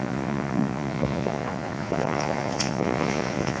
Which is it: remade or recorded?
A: remade